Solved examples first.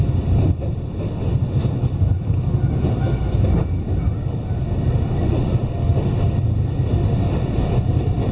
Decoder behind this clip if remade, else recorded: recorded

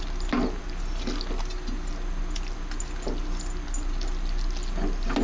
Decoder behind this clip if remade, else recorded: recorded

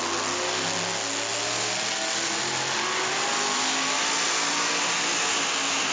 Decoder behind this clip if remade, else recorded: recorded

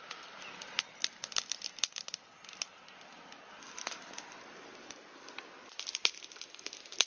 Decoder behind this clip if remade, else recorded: recorded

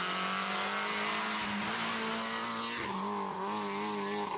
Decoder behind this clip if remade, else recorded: recorded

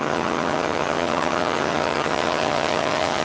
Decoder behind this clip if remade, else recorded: remade, vocoder, HiFi-GAN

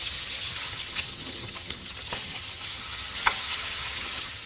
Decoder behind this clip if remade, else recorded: remade, vocoder, HiFi-GAN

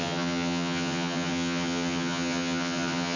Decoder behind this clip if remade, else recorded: remade, vocoder, HiFi-GAN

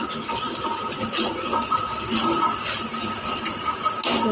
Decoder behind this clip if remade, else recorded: recorded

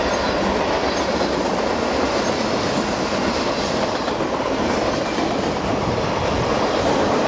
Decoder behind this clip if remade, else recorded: recorded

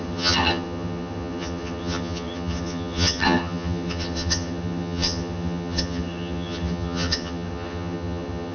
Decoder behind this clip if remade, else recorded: remade, vocoder, HiFi-GAN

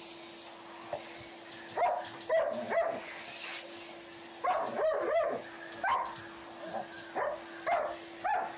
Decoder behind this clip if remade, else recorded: recorded